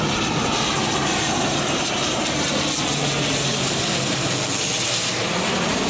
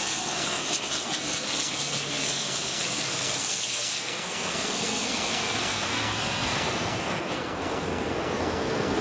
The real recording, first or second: first